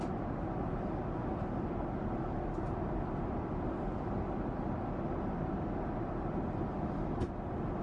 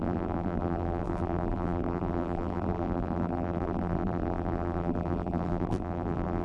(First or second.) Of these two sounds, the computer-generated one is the second